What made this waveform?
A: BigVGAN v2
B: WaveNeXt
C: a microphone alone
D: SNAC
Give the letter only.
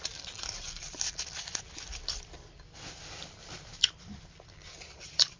C